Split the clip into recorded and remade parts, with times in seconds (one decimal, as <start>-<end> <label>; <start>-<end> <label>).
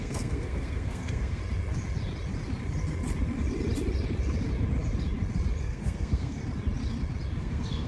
0.0-1.4 remade; 1.4-5.6 recorded; 5.6-6.4 remade; 6.4-7.4 recorded; 7.4-7.9 remade